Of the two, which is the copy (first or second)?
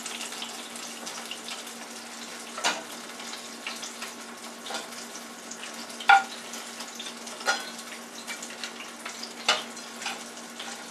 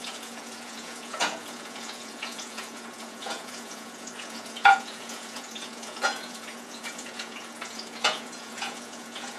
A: second